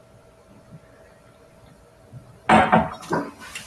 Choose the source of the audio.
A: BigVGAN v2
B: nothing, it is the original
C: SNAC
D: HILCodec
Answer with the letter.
B